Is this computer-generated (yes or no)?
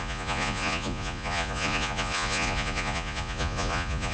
yes